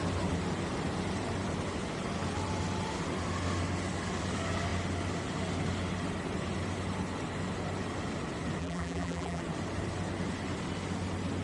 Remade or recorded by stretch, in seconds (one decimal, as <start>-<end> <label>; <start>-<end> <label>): 0.0-8.6 recorded; 8.6-9.4 remade; 9.4-11.4 recorded